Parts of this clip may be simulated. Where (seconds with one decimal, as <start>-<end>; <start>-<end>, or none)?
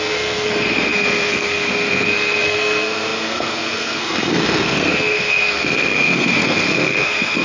0.0-7.4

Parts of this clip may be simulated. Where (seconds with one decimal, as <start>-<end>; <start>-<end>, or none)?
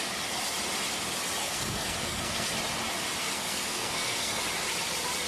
1.4-2.5; 3.2-4.4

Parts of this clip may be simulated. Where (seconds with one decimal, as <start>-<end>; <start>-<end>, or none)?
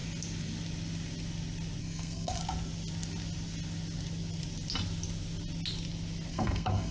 1.8-2.4; 6.3-6.9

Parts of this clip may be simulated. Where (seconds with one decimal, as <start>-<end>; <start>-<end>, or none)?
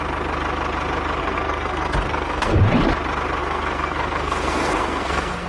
1.2-2.6; 3.4-5.5